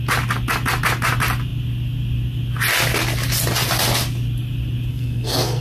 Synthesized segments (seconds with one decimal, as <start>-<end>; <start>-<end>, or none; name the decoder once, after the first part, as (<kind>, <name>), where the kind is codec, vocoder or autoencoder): 4.9-5.6 (codec, SNAC)